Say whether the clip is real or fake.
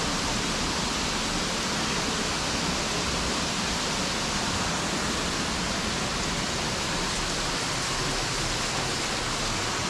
real